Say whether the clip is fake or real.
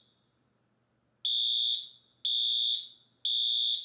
real